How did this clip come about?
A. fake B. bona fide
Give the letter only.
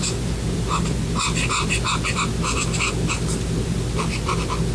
A